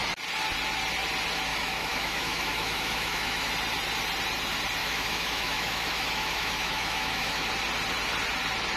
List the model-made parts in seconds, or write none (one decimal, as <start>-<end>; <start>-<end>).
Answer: 1.5-3.5; 4.8-7.5